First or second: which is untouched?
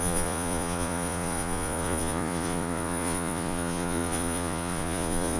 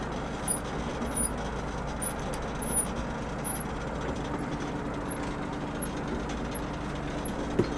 second